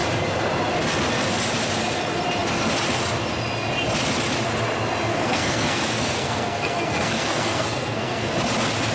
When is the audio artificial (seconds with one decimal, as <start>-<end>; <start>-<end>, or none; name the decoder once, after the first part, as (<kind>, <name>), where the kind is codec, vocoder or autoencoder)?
5.1-8.3 (codec, SNAC)